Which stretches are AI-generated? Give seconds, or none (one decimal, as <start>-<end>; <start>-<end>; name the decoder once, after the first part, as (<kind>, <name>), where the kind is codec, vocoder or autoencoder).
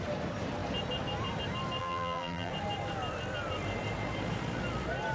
1.8-2.5 (vocoder, BigVGAN v2)